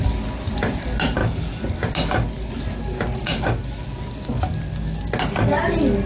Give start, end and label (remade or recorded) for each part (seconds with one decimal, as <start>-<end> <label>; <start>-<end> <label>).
0.0-1.2 recorded; 1.2-1.9 remade; 1.9-6.1 recorded